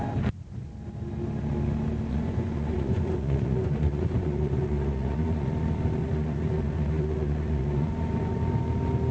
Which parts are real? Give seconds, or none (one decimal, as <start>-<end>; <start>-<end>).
0.0-2.1; 5.5-6.0; 7.9-9.1